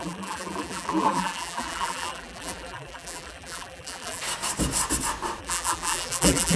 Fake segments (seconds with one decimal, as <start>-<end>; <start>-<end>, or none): 0.0-4.2; 5.4-6.6